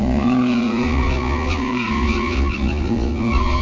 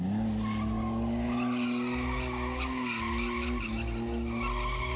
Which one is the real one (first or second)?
second